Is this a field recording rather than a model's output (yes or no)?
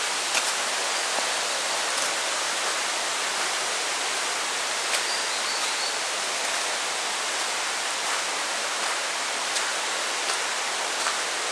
yes